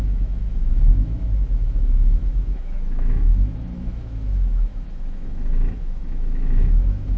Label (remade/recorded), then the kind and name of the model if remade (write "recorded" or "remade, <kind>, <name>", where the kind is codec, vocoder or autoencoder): remade, autoencoder, DAC-VAE